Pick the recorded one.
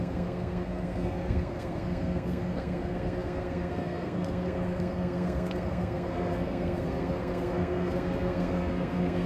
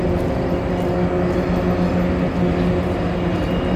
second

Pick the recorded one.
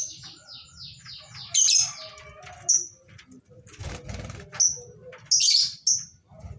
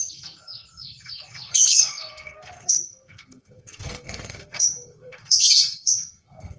first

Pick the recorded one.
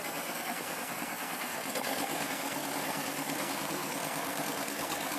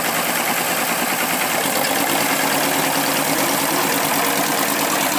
second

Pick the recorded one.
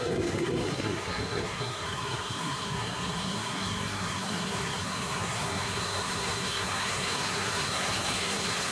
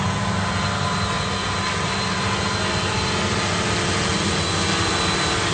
second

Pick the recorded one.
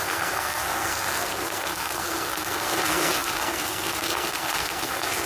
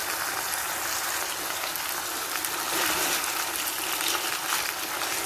second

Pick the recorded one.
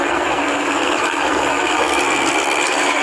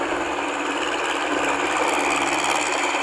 second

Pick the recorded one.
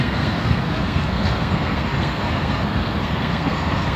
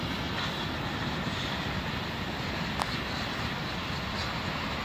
second